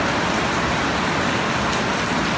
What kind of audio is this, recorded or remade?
recorded